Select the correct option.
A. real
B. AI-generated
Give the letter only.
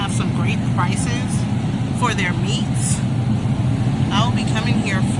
A